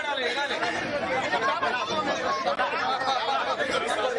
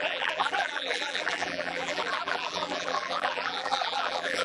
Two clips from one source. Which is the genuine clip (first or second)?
first